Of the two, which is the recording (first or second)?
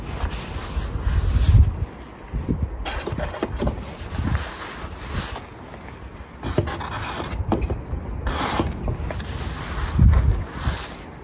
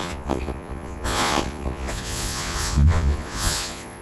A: first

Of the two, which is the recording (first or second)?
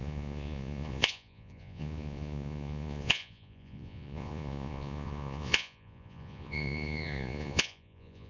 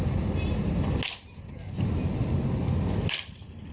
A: second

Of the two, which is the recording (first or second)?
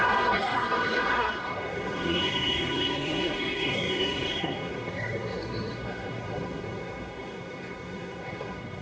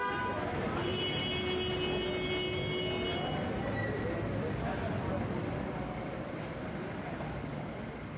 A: second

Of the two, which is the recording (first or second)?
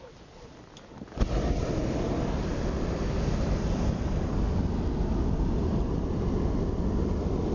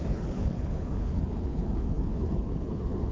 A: first